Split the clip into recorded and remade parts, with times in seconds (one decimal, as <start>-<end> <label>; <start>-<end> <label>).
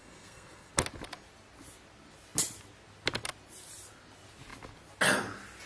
0.0-0.7 remade; 0.7-5.7 recorded